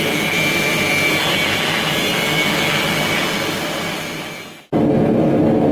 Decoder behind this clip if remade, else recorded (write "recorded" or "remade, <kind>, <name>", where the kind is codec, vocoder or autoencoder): recorded